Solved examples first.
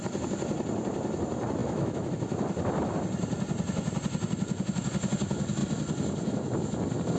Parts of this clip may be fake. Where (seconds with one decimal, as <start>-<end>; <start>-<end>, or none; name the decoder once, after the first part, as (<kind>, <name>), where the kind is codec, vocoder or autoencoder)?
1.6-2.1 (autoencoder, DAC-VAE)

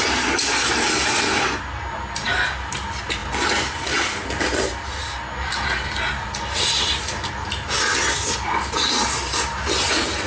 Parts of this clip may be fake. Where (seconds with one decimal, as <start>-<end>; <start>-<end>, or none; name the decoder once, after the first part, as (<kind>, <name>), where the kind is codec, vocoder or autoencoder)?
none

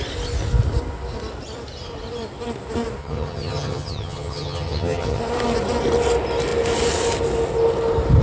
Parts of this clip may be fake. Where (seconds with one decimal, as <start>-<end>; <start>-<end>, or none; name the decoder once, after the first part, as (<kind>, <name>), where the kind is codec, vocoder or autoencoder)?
3.0-5.2 (vocoder, HiFi-GAN)